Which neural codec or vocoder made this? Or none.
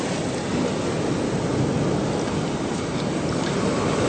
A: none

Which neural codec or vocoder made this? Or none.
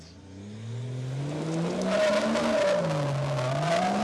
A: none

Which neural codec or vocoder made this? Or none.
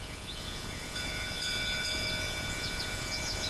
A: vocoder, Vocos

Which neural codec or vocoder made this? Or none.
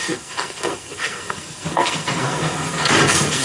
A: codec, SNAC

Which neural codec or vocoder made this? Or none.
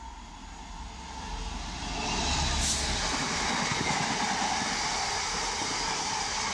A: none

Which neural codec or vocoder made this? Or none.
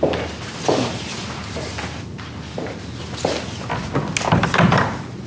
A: none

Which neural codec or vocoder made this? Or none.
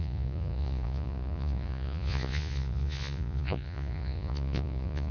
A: vocoder, Vocos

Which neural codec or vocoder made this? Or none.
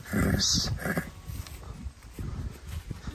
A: none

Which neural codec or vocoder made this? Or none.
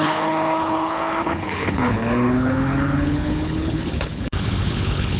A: codec, HILCodec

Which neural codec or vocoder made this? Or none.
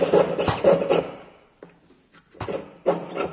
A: none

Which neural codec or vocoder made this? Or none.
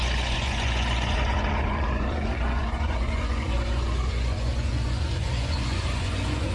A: vocoder, Vocos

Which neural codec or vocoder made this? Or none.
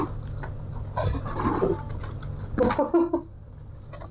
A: none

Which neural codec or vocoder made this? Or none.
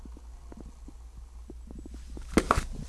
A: none